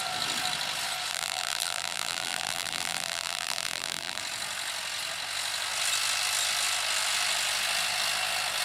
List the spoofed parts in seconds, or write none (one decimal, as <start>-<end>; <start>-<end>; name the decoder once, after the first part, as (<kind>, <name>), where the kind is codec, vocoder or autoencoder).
1.1-4.2 (vocoder, BigVGAN v2)